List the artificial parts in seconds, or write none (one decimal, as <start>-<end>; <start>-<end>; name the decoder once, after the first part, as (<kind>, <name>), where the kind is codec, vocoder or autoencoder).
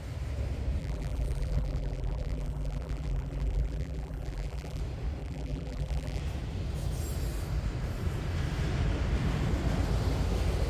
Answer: 0.8-4.8 (vocoder, BigVGAN v2); 5.2-6.2